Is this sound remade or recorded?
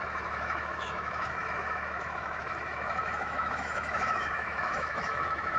remade